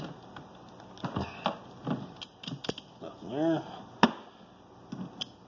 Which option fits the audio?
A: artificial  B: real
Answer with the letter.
B